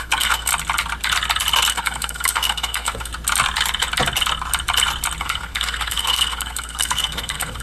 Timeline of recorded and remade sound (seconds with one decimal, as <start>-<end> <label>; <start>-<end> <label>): 0.0-0.5 remade; 0.5-1.7 recorded; 1.7-3.1 remade; 3.1-5.2 recorded; 5.2-7.6 remade